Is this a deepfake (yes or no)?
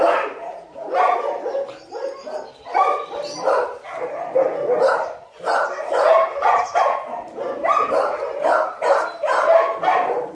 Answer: no